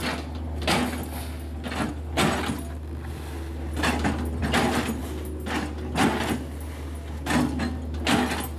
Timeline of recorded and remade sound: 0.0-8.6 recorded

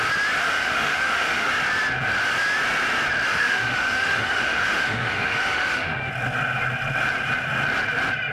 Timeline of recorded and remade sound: 0.0-0.4 recorded; 0.4-1.5 remade; 1.5-3.3 recorded; 3.3-6.1 remade; 6.1-8.3 recorded

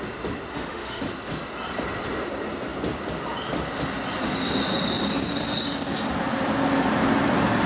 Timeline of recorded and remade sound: 0.0-0.5 recorded; 0.5-1.0 remade; 1.0-7.7 recorded